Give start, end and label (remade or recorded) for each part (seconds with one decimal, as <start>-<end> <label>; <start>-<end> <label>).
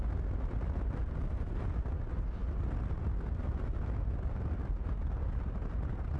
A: 0.0-6.2 recorded